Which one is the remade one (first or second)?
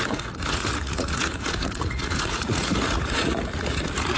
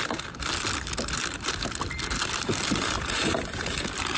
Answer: first